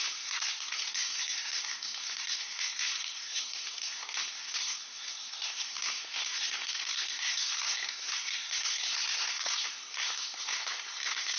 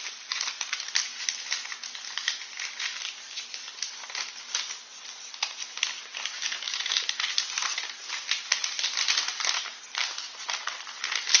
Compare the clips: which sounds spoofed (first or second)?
first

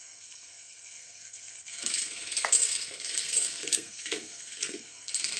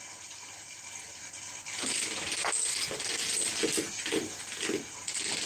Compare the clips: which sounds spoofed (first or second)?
first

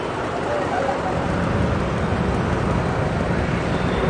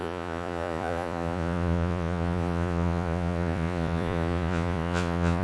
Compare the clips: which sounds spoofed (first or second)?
second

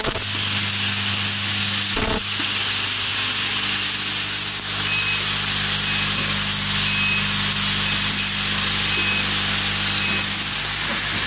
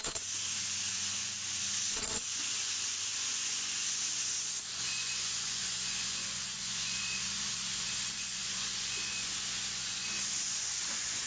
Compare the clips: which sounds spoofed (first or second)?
second